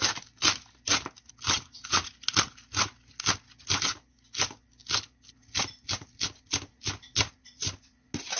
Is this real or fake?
real